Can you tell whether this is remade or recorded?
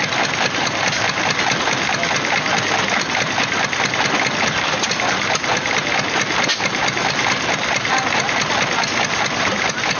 recorded